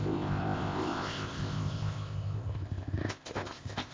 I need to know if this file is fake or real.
fake